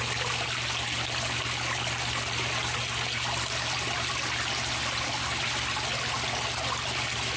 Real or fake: real